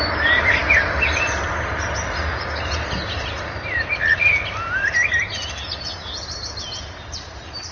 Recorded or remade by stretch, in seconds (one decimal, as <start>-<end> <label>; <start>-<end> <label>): 0.0-7.7 recorded